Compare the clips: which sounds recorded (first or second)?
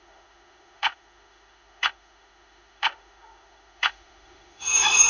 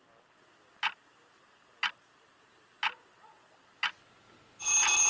second